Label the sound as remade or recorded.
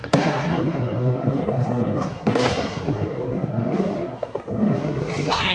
remade